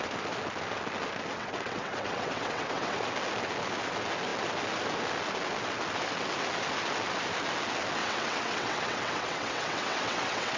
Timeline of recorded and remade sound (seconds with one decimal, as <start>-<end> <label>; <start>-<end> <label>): 0.0-1.4 recorded; 1.4-3.0 remade; 3.0-8.0 recorded; 8.0-10.6 remade